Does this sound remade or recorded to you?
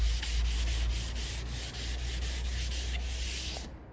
recorded